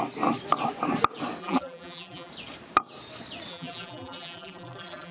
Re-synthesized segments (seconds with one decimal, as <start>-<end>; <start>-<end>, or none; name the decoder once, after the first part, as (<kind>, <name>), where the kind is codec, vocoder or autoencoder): 1.4-2.3 (vocoder, BigVGAN v2); 3.5-5.1